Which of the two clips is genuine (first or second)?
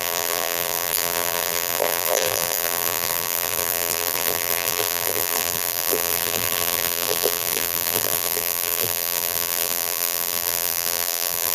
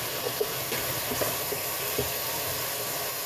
second